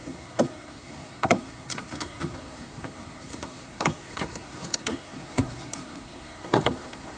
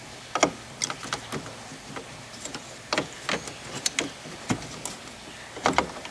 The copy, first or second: first